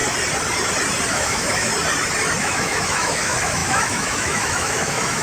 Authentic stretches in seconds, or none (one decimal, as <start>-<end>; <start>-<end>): 0.0-1.1; 1.7-2.4